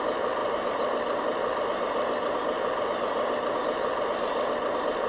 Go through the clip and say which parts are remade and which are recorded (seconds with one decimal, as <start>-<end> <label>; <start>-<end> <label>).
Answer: 0.0-5.1 recorded